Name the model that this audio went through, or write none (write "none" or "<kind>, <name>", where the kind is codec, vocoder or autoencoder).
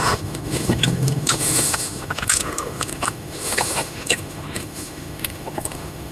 autoencoder, DAC-VAE